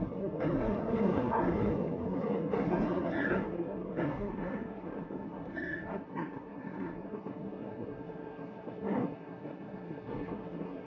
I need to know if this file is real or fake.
fake